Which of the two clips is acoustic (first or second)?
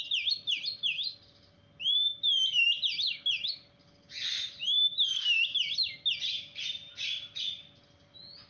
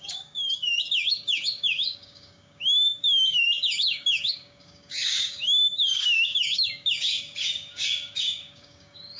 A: first